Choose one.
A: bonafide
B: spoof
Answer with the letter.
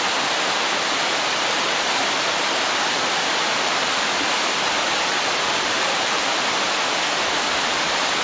A